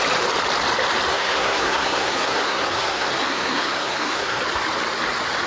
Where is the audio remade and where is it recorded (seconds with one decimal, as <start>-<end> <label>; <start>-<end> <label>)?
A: 0.0-1.1 recorded; 1.1-4.4 remade; 4.4-5.5 recorded